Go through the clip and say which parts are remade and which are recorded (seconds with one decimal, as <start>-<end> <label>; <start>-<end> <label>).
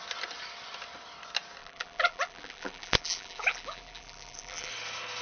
0.0-1.6 recorded; 1.6-4.7 remade; 4.7-5.2 recorded